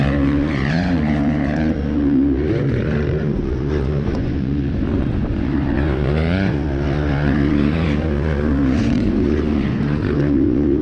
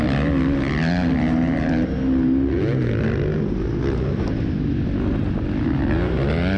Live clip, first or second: second